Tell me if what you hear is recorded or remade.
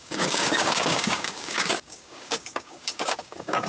remade